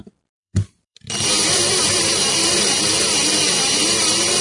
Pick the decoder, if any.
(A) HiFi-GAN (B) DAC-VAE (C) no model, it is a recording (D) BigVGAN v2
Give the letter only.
D